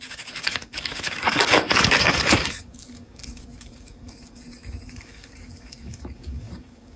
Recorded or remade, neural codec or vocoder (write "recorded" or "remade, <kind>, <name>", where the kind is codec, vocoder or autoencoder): remade, codec, DAC